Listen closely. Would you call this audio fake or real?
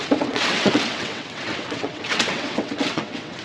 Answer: fake